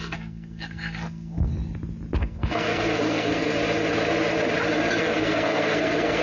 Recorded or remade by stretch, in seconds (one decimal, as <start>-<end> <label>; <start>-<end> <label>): 0.0-1.5 remade; 1.5-2.2 recorded; 2.2-3.5 remade; 3.5-5.0 recorded; 5.0-6.2 remade